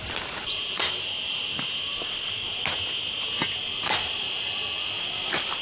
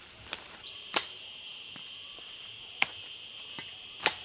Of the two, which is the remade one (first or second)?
second